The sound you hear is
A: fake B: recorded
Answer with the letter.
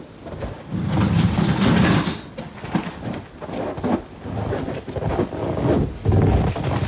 B